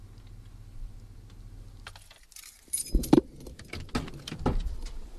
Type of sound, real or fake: real